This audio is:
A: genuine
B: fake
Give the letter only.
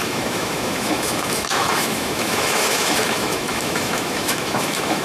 B